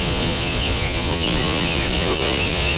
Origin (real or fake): fake